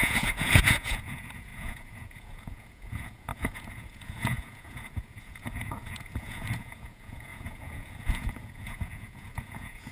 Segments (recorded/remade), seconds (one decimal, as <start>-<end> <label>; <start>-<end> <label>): 0.0-9.9 remade

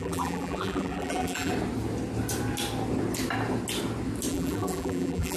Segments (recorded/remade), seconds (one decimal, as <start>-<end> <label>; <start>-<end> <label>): 0.0-1.5 remade; 1.5-4.3 recorded; 4.3-5.4 remade

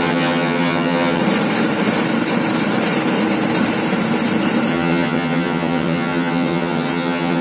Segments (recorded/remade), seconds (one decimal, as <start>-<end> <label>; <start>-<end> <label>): 0.0-1.2 remade; 1.2-4.7 recorded; 4.7-7.4 remade

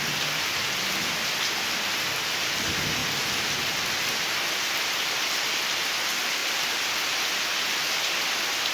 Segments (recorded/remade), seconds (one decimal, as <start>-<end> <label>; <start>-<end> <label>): 0.0-8.7 recorded